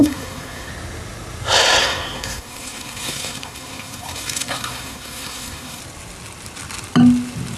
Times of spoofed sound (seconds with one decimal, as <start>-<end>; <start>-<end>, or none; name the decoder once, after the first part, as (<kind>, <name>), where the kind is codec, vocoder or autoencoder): 0.0-0.7 (codec, SNAC); 1.8-5.8